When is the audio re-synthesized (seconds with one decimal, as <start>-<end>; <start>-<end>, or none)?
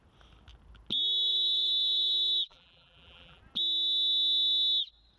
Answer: 1.3-3.4